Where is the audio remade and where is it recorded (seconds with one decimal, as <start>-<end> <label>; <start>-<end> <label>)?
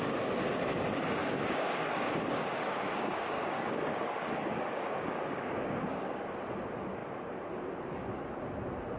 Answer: 0.0-1.2 recorded; 1.2-6.2 remade; 6.2-9.0 recorded